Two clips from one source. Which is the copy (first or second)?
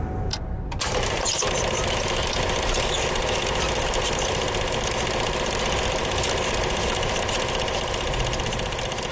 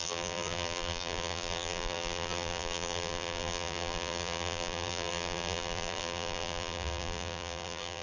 second